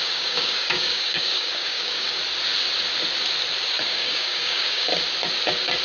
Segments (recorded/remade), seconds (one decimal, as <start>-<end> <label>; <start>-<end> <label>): 0.0-2.2 remade; 2.2-3.7 recorded; 3.7-4.9 remade; 4.9-5.8 recorded